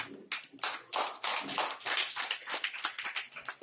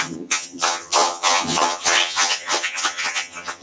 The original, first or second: first